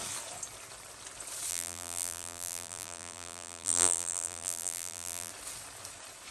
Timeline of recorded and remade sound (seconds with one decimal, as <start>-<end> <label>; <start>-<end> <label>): 0.0-1.5 recorded; 1.5-5.3 remade; 5.3-6.3 recorded